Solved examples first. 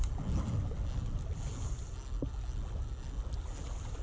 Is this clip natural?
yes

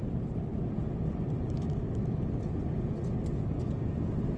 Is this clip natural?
yes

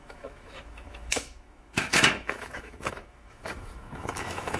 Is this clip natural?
no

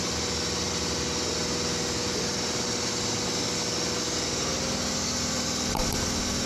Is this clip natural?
yes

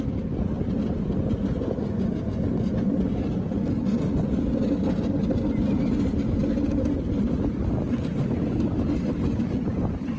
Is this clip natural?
yes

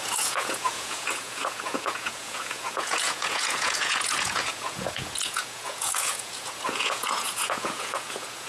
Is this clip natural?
no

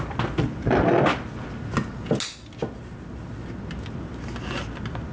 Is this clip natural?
yes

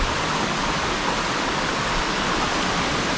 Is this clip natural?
yes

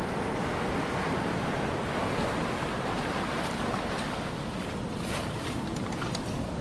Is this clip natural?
yes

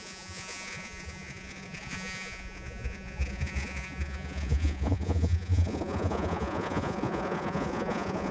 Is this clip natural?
no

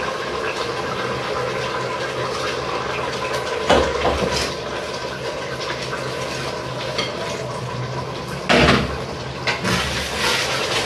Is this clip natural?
yes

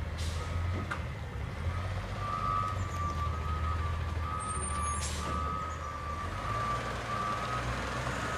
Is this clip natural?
yes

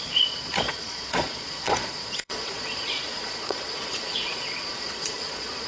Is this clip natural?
no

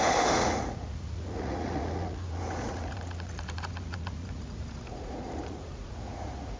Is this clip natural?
no